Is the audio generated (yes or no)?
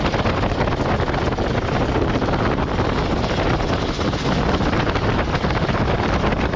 no